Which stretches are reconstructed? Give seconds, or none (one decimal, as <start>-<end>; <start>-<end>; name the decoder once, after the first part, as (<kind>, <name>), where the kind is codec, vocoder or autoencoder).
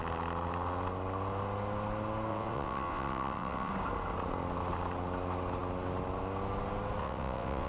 2.3-3.7 (vocoder, WaveNeXt); 7.0-7.7